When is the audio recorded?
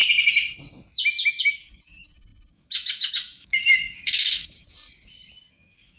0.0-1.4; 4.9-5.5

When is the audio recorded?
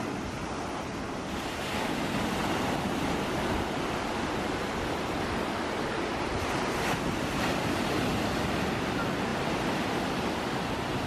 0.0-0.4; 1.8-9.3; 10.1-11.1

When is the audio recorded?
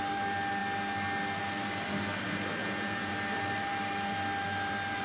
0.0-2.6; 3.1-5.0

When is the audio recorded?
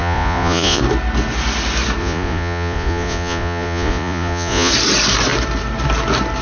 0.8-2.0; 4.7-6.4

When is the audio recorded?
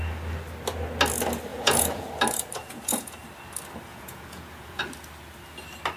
0.0-1.5; 2.1-2.6; 3.2-3.9; 4.8-6.0